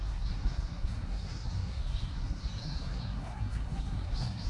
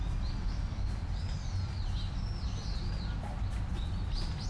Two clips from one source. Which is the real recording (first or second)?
second